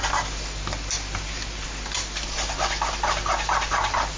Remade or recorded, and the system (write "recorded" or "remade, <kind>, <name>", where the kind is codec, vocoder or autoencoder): recorded